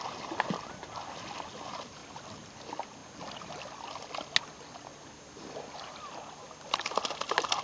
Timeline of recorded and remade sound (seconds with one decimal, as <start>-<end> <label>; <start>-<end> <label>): 0.0-7.6 recorded